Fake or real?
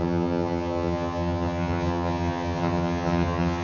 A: fake